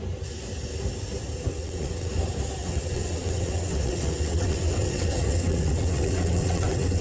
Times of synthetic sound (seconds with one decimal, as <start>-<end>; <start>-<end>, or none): 1.5-2.1; 2.6-7.0